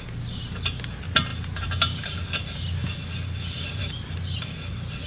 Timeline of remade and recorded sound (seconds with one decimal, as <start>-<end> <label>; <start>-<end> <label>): 0.0-1.3 recorded; 1.3-2.2 remade; 2.2-5.1 recorded